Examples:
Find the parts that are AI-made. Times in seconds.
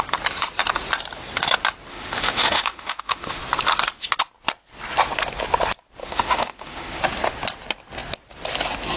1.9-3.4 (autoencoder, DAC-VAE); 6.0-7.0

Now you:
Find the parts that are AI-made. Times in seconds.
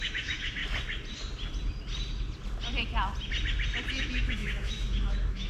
0.0-0.6 (autoencoder, DAC-VAE); 3.9-5.5